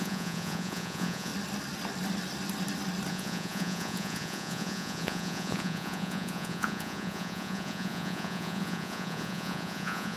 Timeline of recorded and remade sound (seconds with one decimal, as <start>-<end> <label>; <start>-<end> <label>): 0.0-1.3 remade; 1.3-3.1 recorded; 3.1-10.2 remade